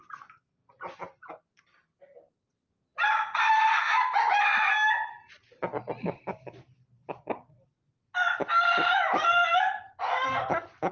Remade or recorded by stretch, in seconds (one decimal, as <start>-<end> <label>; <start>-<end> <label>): 0.0-10.9 recorded